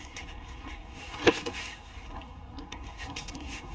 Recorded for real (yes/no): no